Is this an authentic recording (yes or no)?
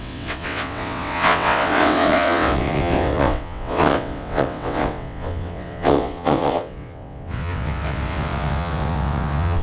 no